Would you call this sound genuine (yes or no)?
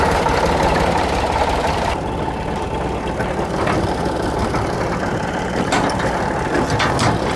no